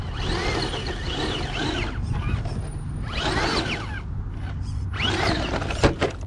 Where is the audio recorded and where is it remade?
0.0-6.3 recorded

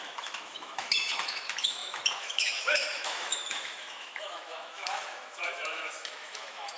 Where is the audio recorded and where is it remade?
0.0-6.8 remade

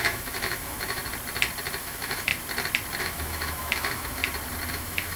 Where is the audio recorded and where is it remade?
0.0-1.0 remade; 1.0-1.8 recorded; 1.8-2.3 remade; 2.3-3.0 recorded; 3.0-4.2 remade; 4.2-4.7 recorded; 4.7-5.2 remade

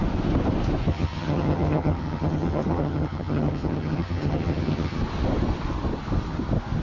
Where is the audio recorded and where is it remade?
0.0-0.9 recorded; 0.9-5.0 remade; 5.0-6.8 recorded

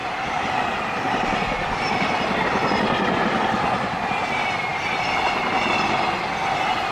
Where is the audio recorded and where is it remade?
0.0-4.1 remade; 4.1-4.7 recorded; 4.7-5.7 remade; 5.7-6.9 recorded

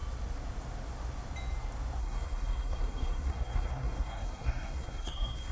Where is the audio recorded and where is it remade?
0.0-2.0 recorded; 2.0-5.5 remade

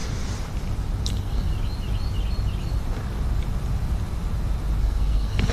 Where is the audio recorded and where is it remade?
0.0-1.1 recorded; 1.1-1.5 remade; 1.5-4.8 recorded; 4.8-5.5 remade